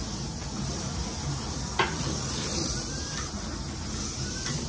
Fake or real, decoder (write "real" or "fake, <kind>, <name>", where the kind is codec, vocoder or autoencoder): real